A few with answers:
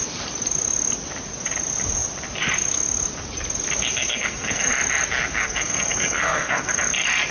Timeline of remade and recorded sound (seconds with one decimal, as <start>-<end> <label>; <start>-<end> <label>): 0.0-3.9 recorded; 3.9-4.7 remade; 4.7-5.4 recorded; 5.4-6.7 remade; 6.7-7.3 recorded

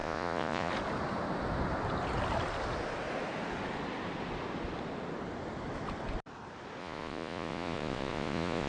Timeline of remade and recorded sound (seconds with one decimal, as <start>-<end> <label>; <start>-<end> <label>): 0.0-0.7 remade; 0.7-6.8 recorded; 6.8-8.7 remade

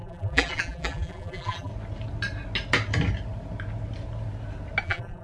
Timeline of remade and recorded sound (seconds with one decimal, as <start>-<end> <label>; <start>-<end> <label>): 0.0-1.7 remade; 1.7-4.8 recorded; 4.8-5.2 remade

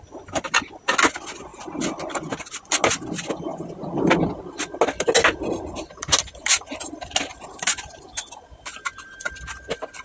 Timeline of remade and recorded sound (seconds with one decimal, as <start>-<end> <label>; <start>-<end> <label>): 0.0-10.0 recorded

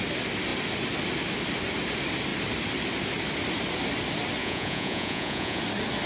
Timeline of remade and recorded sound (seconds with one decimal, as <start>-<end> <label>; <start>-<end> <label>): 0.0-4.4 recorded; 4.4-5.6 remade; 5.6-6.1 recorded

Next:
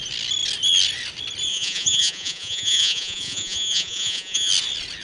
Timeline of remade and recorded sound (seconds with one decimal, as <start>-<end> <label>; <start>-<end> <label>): 0.0-1.5 recorded; 1.5-4.5 remade; 4.5-5.0 recorded

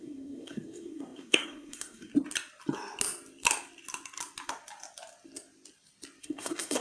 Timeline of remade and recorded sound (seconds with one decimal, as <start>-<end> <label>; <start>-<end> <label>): 0.0-2.1 remade; 2.1-6.2 recorded; 6.2-6.8 remade

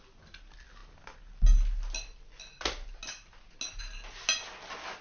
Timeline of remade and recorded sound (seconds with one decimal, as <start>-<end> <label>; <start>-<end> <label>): 0.0-5.0 recorded